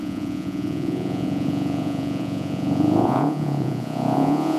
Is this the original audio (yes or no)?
no